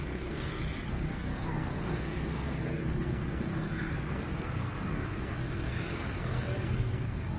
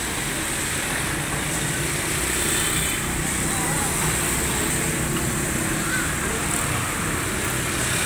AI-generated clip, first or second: first